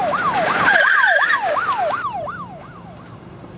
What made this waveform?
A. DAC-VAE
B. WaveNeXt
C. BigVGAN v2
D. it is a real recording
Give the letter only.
C